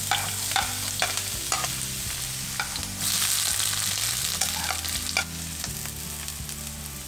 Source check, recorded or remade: recorded